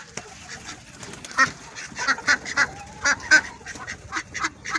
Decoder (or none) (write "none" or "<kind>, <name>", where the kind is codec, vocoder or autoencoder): none